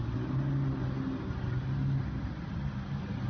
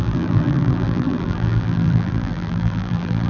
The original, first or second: first